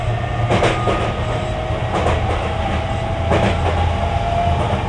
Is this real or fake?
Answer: real